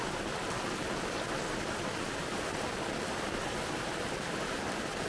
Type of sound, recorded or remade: recorded